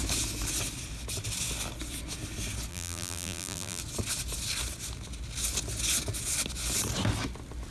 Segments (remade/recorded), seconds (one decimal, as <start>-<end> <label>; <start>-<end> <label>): 0.0-2.7 recorded; 2.7-3.8 remade; 3.8-7.7 recorded